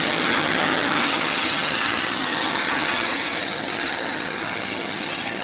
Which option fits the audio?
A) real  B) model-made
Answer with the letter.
B